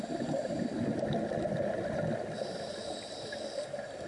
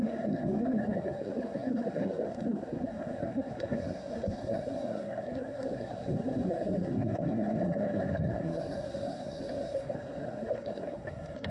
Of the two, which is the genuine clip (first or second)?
first